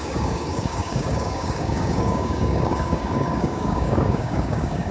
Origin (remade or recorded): remade